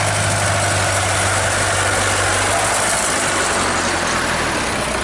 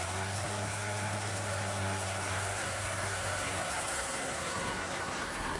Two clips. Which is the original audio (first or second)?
first